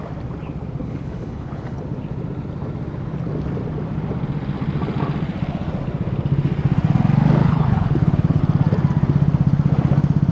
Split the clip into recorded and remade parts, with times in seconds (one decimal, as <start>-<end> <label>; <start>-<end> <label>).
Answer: 0.0-0.8 recorded; 0.8-1.8 remade; 1.8-7.4 recorded; 7.4-8.4 remade; 8.4-10.3 recorded